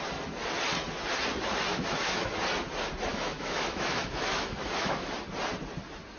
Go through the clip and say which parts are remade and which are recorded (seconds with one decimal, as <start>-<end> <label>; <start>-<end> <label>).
0.0-1.7 recorded; 1.7-2.3 remade; 2.3-3.1 recorded; 3.1-5.1 remade; 5.1-6.2 recorded